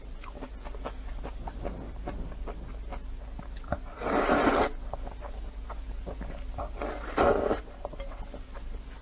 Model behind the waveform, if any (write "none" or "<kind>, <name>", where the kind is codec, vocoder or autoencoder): none